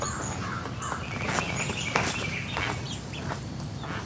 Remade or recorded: recorded